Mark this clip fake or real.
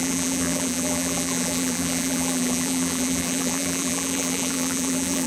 fake